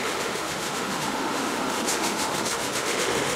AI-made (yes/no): yes